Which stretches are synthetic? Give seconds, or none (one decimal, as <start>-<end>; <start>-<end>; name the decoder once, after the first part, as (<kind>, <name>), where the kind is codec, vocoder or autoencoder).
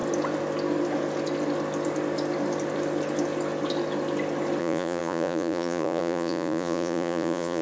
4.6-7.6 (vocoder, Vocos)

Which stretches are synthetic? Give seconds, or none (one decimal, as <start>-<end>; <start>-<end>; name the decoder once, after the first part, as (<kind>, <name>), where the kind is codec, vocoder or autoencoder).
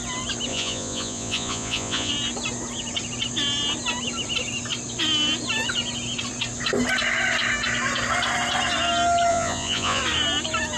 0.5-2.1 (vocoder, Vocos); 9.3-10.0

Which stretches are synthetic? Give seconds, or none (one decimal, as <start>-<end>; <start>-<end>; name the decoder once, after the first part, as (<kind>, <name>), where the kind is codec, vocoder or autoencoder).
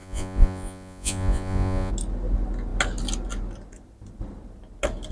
0.0-1.9 (vocoder, Vocos)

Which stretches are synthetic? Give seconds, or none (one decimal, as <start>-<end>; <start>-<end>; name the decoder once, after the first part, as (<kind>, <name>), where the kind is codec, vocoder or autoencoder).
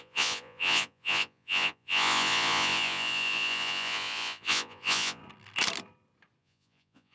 0.0-5.2 (vocoder, Vocos); 6.4-7.1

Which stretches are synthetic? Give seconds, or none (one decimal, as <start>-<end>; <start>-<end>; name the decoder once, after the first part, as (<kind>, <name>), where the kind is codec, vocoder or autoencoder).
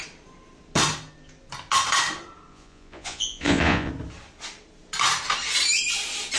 2.5-3.9 (vocoder, Vocos)